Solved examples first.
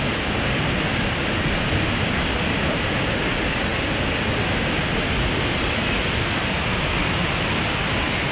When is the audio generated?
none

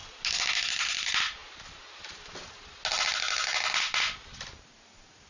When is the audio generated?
none

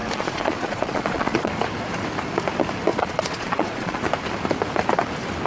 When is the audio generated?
0.0-1.5 (vocoder, Vocos); 2.9-4.0

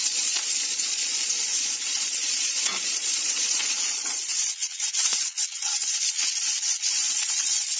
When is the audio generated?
0.0-7.8 (vocoder, Vocos)

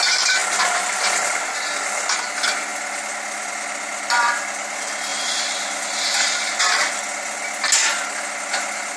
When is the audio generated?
5.1-6.6 (vocoder, BigVGAN v2)